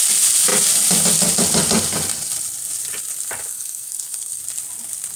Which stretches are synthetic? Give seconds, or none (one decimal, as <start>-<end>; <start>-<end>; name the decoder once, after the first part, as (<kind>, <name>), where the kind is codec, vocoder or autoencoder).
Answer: 3.5-4.4 (codec, SNAC)